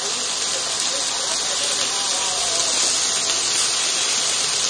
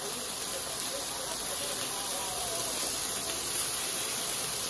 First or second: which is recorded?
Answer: first